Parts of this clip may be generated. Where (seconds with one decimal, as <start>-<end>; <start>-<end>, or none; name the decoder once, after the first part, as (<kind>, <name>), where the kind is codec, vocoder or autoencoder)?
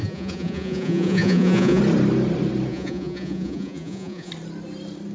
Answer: 0.0-1.8 (vocoder, Vocos); 2.7-4.3